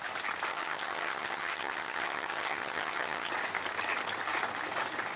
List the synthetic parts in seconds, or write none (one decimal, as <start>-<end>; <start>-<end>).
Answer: 0.5-3.3